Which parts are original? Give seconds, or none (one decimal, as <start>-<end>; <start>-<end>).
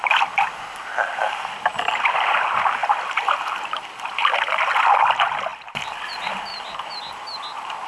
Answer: 0.0-1.7; 2.4-2.8; 4.4-5.5; 6.1-7.9